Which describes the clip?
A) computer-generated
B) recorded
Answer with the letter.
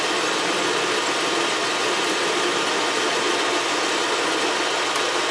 B